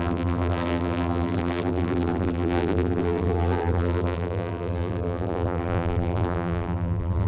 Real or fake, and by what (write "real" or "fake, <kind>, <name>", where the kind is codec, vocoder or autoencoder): fake, vocoder, BigVGAN v2